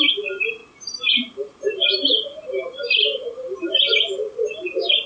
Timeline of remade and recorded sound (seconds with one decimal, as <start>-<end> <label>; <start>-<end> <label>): 0.0-0.6 recorded; 0.6-3.7 remade; 3.7-5.1 recorded